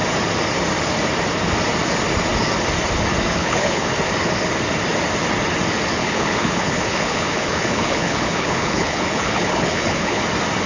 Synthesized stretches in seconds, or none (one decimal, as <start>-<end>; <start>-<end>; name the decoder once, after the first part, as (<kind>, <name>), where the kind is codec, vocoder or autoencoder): 3.4-3.9 (codec, HILCodec); 6.0-10.2